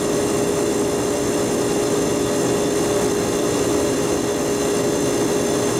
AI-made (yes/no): no